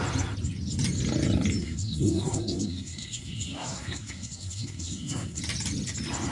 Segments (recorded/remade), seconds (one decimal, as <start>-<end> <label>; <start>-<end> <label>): 0.0-1.6 recorded; 1.6-5.4 remade; 5.4-6.3 recorded